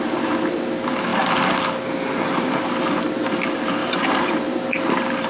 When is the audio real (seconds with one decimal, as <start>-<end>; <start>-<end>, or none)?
0.0-3.8; 4.4-5.3